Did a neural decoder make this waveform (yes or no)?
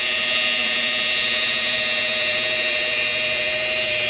yes